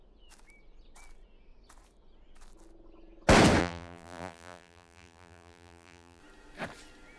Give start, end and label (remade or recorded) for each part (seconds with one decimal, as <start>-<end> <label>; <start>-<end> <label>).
0.0-3.6 recorded; 3.6-6.2 remade; 6.2-7.2 recorded